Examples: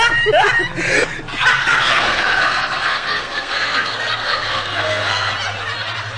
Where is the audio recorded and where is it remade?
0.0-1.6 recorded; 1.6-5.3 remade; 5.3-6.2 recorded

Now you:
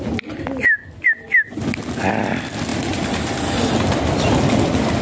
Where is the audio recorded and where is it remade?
0.0-5.0 recorded

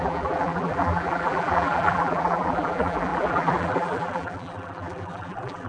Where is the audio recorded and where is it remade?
0.0-5.7 remade